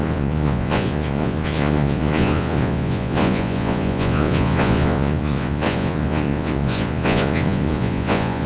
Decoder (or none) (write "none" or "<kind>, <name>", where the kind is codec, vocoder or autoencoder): vocoder, Vocos